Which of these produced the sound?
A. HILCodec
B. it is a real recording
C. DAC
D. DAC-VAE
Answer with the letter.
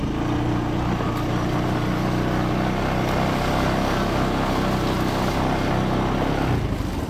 B